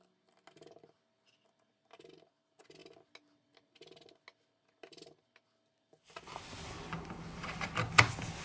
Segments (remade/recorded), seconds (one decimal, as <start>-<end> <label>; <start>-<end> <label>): 0.0-8.4 recorded